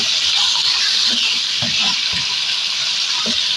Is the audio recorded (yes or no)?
yes